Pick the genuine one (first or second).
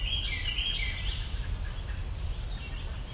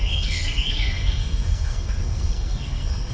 first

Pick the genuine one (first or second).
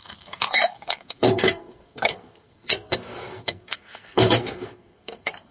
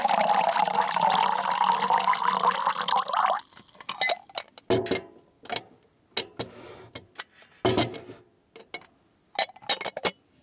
second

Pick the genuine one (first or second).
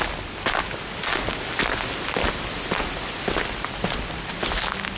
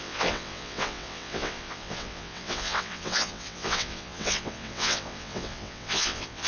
first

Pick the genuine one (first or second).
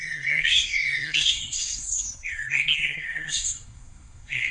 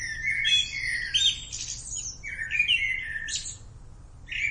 second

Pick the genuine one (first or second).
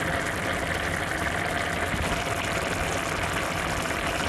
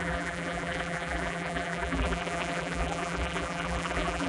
first